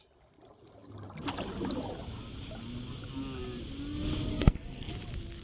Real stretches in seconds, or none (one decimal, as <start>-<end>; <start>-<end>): 0.0-4.3; 4.9-5.4